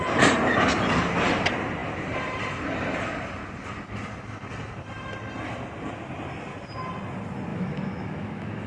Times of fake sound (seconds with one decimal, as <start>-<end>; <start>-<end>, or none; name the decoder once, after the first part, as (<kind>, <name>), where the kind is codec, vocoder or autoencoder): 7.5-8.7 (autoencoder, DAC-VAE)